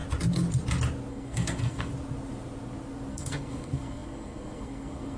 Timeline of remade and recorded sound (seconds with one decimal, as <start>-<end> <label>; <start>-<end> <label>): 0.0-1.1 recorded; 1.1-1.9 remade; 1.9-3.1 recorded; 3.1-5.2 remade